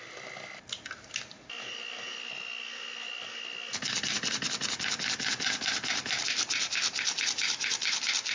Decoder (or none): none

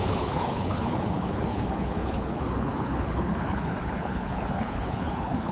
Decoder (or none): codec, HILCodec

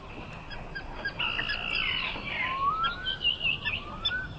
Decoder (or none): none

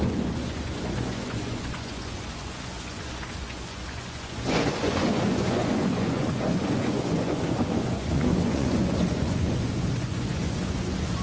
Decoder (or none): vocoder, Vocos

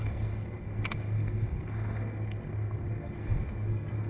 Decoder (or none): codec, SNAC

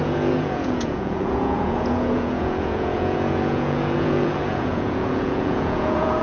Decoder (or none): vocoder, Vocos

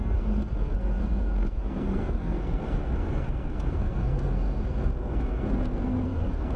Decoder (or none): codec, SNAC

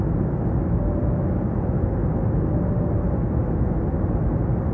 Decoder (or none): none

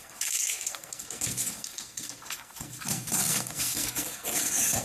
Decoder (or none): codec, SNAC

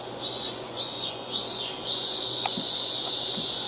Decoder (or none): vocoder, Vocos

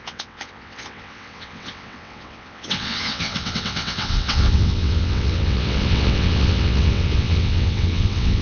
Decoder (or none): vocoder, WaveNeXt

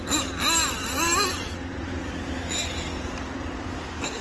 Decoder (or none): none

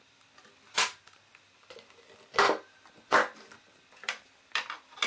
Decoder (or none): vocoder, BigVGAN v2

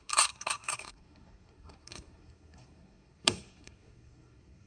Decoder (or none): codec, SNAC